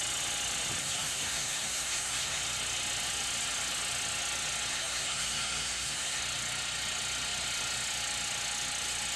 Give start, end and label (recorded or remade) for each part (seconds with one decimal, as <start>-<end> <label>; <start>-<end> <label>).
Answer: 0.0-0.8 recorded; 0.8-2.4 remade; 2.4-4.7 recorded; 4.7-6.2 remade; 6.2-9.2 recorded